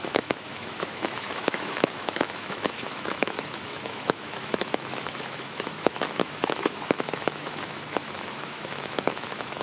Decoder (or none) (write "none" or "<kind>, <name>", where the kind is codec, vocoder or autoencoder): autoencoder, DAC-VAE